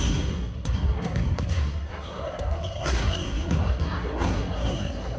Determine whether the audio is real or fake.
fake